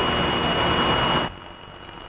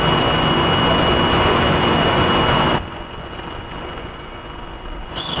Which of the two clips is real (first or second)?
first